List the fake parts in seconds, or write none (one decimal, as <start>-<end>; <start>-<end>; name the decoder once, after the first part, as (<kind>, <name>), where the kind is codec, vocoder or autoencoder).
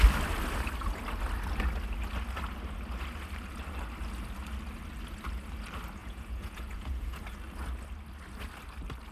6.0-7.2 (vocoder, Vocos)